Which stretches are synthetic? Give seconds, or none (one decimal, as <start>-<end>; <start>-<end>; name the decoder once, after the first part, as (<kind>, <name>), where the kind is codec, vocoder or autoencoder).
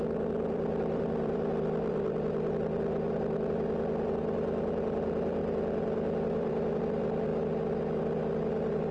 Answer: 0.0-7.3 (vocoder, BigVGAN v2)